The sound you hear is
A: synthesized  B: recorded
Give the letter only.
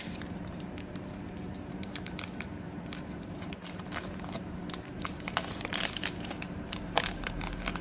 A